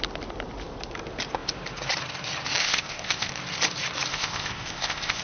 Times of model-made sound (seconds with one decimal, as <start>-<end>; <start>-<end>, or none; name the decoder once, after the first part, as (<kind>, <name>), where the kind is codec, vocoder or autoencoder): 2.6-3.3 (codec, ZipCodec); 4.1-5.2